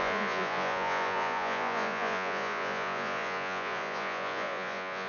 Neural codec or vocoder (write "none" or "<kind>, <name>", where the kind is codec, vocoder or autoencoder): vocoder, Vocos